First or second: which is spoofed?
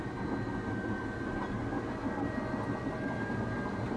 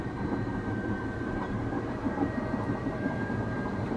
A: second